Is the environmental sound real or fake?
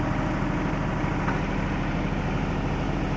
real